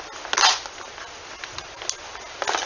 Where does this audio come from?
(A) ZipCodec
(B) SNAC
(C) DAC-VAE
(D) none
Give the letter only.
D